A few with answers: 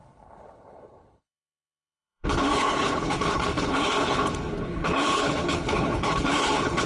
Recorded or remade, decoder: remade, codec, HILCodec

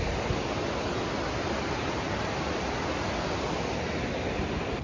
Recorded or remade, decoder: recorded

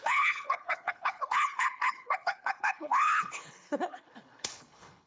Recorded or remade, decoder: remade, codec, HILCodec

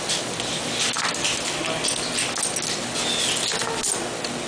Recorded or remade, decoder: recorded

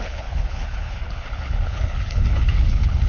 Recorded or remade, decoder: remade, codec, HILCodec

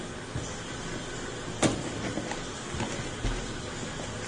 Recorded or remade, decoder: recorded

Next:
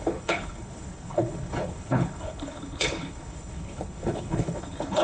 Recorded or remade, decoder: remade, codec, HILCodec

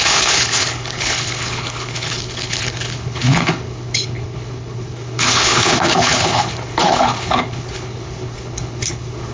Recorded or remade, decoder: remade, codec, HILCodec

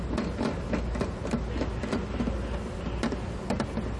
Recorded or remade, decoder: recorded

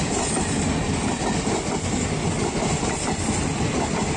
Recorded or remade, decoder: recorded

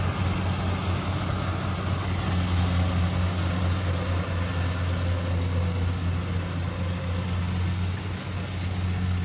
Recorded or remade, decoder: recorded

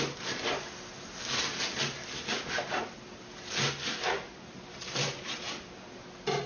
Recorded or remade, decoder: recorded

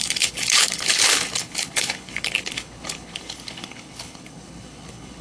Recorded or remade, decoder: remade, codec, HILCodec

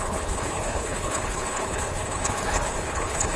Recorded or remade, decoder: remade, codec, HILCodec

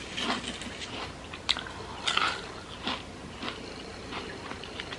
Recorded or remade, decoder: recorded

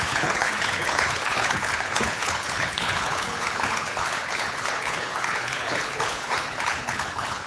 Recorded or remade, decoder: remade, codec, HILCodec